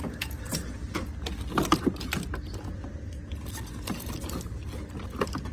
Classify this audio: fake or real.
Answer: real